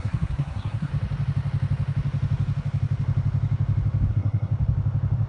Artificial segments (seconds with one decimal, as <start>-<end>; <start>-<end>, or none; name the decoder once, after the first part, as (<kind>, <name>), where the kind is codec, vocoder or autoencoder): 0.0-0.9 (codec, SNAC); 4.1-4.5